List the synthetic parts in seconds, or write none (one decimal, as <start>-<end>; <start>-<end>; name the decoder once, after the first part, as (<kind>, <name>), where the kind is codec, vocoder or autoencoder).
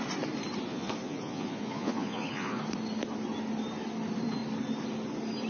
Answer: 0.7-2.6 (vocoder, Vocos)